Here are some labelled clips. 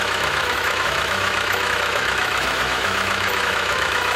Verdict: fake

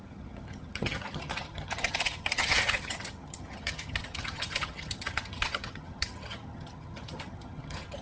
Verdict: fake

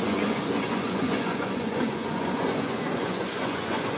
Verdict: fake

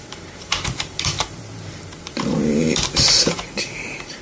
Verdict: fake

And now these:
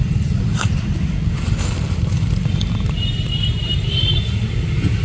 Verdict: fake